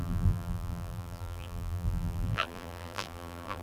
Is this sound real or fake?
fake